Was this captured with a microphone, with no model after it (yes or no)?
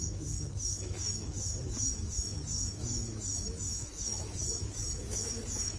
no